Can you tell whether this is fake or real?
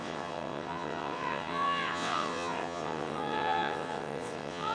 fake